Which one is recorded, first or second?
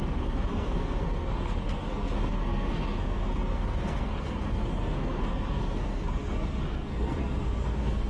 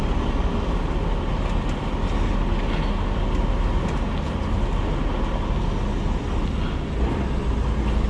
second